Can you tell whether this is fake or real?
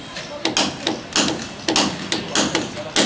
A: real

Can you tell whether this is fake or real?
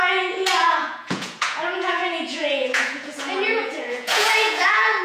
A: fake